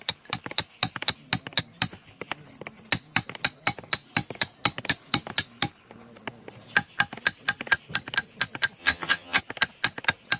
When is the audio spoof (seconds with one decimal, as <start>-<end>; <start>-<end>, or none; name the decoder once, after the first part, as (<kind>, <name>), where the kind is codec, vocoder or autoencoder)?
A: 8.8-9.4 (vocoder, HiFi-GAN)